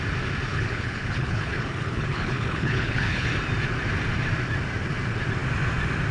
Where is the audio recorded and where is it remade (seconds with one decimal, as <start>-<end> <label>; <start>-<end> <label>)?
0.0-0.5 recorded; 0.5-3.3 remade; 3.3-6.1 recorded